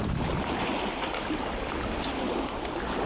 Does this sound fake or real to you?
real